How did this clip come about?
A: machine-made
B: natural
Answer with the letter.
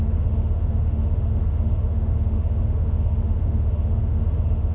A